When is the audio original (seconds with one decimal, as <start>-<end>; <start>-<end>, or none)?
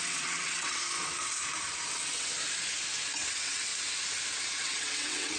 0.8-1.9; 2.3-3.3; 3.7-4.6